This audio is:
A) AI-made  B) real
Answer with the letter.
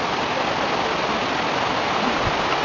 B